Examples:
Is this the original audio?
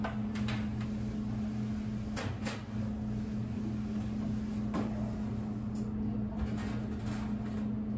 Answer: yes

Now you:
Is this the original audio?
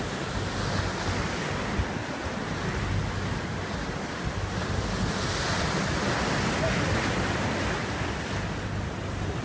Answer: yes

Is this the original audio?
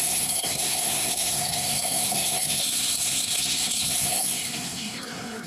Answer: no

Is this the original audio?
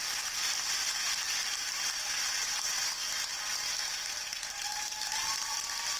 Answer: yes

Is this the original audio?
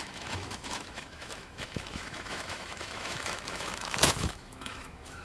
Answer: no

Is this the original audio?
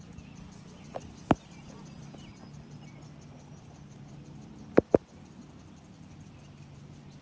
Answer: yes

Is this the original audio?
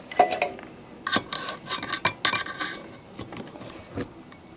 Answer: yes